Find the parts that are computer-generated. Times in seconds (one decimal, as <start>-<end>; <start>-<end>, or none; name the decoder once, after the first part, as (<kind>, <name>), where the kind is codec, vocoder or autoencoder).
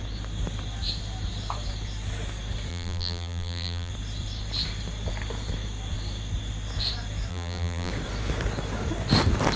2.7-3.9 (vocoder, BigVGAN v2); 7.3-7.9